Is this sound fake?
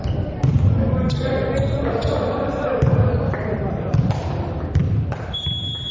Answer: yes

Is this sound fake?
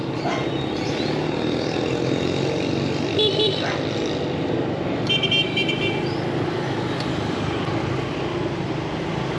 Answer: no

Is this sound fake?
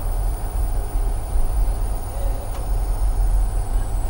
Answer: yes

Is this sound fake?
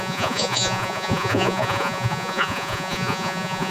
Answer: yes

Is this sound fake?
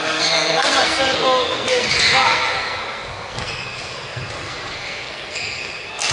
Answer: yes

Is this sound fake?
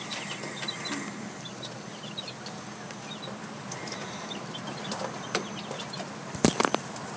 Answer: no